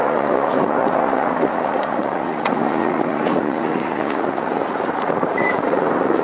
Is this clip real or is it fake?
fake